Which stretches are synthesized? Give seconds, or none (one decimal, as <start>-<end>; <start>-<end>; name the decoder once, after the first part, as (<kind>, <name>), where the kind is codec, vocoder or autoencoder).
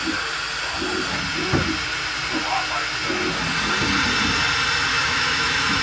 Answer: 4.9-5.8 (autoencoder, DAC-VAE)